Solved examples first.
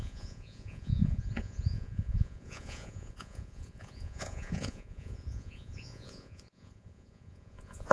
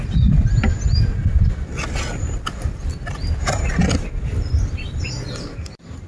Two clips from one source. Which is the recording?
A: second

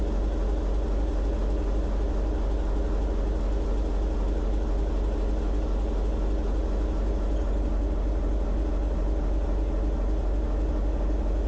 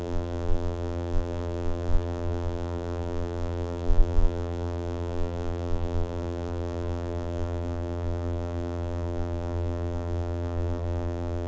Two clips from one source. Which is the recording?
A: first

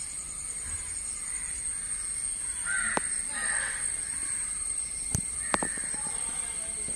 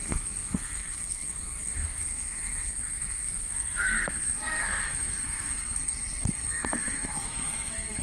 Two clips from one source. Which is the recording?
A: first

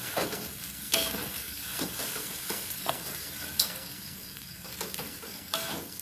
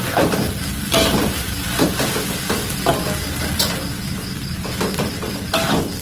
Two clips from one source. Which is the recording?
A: second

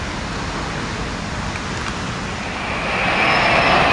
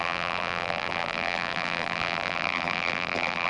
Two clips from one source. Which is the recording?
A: first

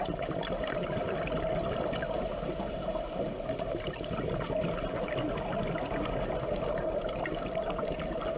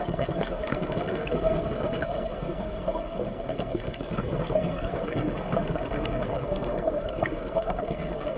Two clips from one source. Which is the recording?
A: first